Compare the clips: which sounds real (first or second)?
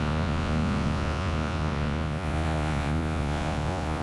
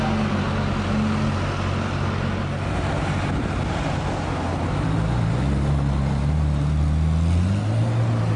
second